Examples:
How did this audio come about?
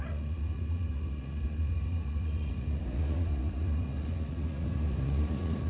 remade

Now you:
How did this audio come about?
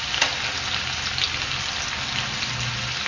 recorded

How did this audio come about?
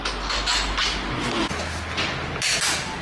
recorded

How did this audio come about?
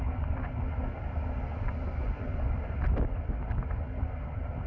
recorded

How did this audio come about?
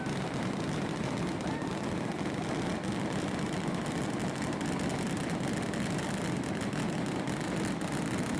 recorded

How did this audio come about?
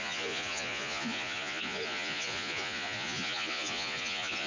remade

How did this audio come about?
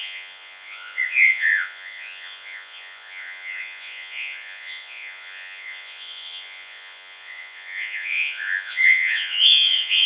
remade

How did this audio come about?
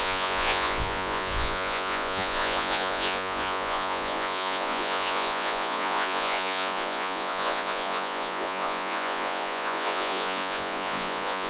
remade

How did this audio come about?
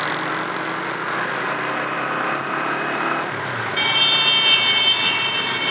recorded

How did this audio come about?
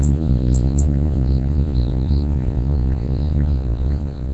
remade